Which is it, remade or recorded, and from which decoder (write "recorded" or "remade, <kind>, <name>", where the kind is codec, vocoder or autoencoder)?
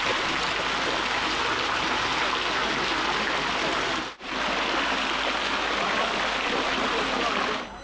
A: recorded